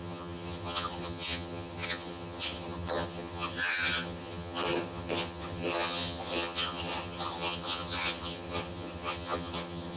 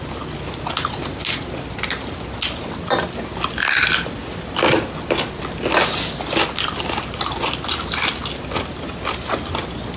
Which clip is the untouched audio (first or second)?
second